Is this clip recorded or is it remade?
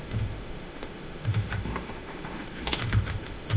remade